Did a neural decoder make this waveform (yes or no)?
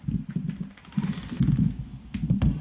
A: no